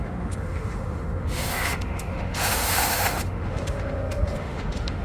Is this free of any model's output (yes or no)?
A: no